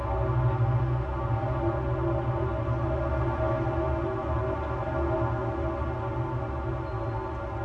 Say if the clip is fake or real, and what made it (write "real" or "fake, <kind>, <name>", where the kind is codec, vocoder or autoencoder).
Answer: real